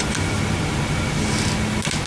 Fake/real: real